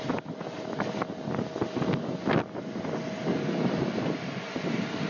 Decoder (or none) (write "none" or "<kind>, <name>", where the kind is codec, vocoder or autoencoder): none